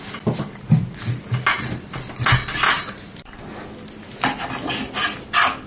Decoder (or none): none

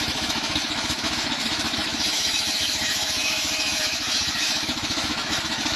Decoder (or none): autoencoder, DAC-VAE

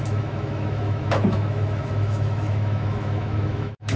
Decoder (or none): autoencoder, DAC-VAE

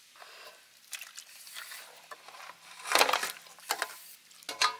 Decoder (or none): none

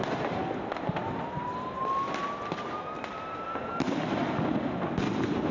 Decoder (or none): none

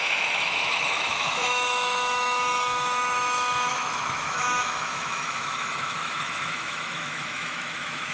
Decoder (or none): autoencoder, DAC-VAE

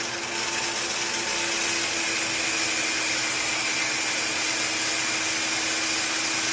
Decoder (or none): none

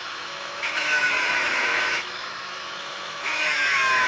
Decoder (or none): autoencoder, DAC-VAE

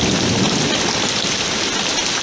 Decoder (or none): none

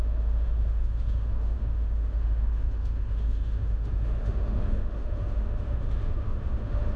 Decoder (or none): autoencoder, DAC-VAE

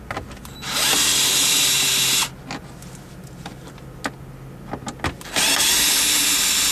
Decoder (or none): none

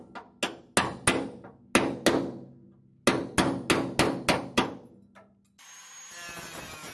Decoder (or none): none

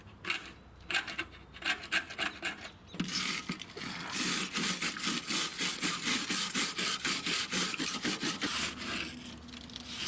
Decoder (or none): none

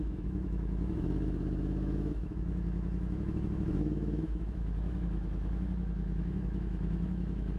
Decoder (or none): autoencoder, DAC-VAE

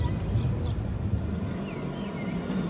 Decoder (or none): none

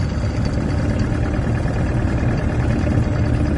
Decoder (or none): none